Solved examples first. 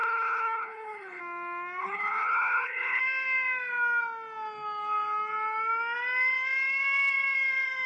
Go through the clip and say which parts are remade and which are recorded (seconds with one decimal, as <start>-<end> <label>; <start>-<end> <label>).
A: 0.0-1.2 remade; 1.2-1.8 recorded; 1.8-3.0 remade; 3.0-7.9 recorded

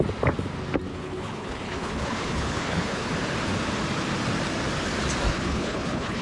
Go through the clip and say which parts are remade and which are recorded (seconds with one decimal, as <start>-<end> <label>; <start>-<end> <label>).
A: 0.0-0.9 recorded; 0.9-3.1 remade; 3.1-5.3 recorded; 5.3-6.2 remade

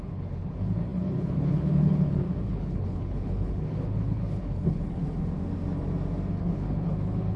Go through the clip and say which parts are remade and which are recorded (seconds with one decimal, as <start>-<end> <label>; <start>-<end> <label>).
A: 0.0-5.0 remade; 5.0-6.4 recorded; 6.4-7.4 remade

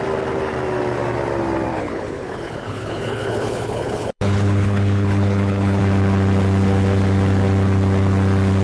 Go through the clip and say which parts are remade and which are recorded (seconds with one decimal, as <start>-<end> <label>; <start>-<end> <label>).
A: 0.0-1.7 recorded; 1.7-5.8 remade; 5.8-8.6 recorded

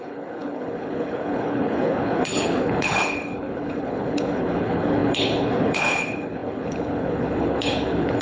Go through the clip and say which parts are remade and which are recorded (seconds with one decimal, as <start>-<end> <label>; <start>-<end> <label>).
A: 0.0-8.2 remade

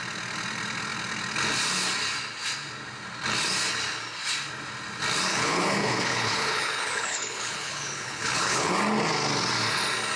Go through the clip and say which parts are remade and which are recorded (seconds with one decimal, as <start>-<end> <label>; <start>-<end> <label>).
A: 0.0-5.3 recorded; 5.3-8.7 remade; 8.7-10.2 recorded